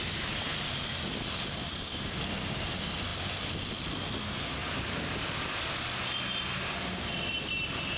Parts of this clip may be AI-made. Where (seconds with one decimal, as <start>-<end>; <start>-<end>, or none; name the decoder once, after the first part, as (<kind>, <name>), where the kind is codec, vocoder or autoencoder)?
none